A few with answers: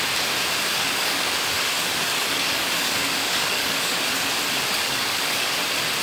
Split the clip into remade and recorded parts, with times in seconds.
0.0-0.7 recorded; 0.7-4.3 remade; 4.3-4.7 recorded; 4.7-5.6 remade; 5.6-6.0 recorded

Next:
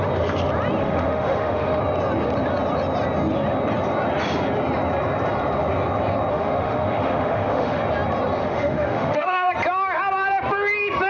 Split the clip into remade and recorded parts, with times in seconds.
0.0-0.8 recorded; 0.8-1.8 remade; 1.8-6.3 recorded; 6.3-7.8 remade; 7.8-8.4 recorded; 8.4-9.5 remade; 9.5-11.1 recorded